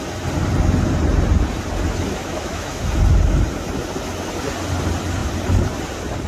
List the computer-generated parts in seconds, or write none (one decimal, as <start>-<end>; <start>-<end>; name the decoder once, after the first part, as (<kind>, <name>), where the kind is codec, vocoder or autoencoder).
2.2-2.8 (autoencoder, DAC-VAE)